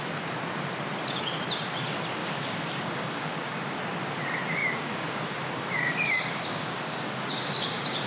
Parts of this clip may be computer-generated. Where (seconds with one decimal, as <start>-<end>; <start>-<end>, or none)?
2.2-3.8; 4.6-8.1